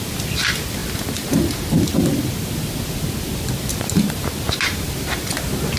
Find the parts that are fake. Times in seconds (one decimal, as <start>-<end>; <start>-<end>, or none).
none